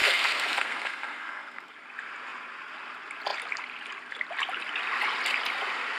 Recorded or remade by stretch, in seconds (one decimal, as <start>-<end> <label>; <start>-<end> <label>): 0.0-1.7 remade; 1.7-6.0 recorded